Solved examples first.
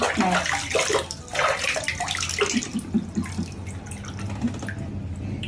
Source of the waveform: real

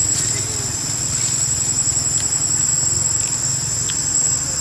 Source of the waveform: real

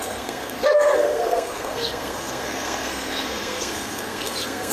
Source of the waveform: fake